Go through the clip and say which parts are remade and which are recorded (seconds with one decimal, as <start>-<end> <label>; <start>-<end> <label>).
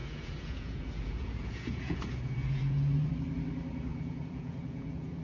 0.0-3.1 remade; 3.1-3.9 recorded; 3.9-5.2 remade